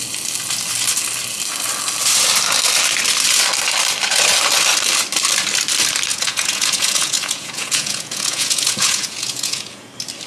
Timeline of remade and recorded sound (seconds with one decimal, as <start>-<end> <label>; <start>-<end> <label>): 0.0-6.1 recorded; 6.1-9.9 remade; 9.9-10.3 recorded